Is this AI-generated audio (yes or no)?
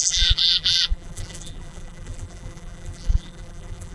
yes